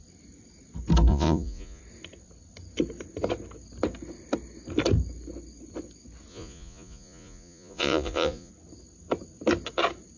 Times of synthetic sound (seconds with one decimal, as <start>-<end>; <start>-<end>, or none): 1.1-1.8; 6.3-8.5